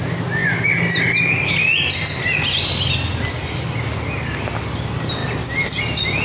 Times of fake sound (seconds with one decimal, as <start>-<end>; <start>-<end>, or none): none